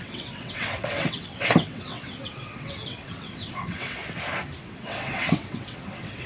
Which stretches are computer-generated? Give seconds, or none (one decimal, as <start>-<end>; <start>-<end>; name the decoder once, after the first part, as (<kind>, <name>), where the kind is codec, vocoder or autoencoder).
0.0-4.0 (vocoder, WaveNeXt); 4.6-6.3